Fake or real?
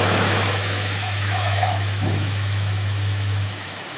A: fake